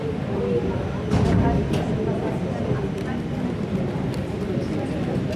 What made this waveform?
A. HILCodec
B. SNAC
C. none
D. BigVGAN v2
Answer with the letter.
C